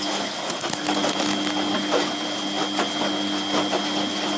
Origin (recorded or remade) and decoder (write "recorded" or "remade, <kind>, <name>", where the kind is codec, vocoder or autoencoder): recorded